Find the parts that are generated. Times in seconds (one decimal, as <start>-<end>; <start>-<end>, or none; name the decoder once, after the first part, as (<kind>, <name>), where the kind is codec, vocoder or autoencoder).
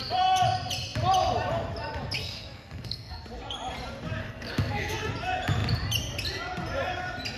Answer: 2.2-3.2 (codec, SNAC); 4.2-5.1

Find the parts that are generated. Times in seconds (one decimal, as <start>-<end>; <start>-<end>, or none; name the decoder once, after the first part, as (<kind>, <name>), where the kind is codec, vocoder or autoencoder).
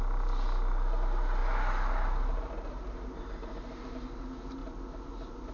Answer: none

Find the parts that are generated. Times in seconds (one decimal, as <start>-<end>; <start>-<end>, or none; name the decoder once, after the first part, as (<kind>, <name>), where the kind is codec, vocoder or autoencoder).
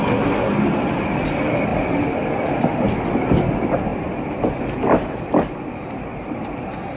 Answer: 0.0-0.5 (codec, SNAC)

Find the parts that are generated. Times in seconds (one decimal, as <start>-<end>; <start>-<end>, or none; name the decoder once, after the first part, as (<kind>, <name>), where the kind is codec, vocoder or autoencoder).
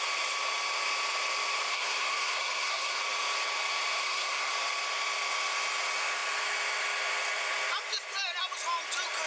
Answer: 1.7-3.0 (codec, SNAC); 4.0-4.5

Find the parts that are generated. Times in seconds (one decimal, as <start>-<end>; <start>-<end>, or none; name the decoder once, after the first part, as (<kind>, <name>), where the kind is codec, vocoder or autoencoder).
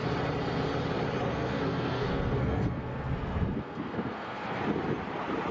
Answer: 1.3-4.6 (codec, SNAC)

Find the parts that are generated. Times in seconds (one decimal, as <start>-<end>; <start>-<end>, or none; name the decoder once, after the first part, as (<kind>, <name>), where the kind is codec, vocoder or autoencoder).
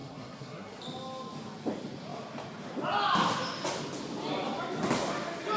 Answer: 0.0-0.8 (codec, SNAC)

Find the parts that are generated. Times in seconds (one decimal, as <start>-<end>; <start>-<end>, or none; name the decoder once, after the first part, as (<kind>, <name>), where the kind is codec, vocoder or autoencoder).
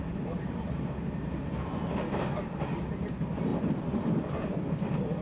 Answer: none